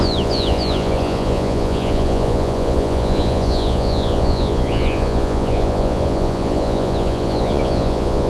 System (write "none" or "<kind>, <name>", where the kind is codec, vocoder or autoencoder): vocoder, Vocos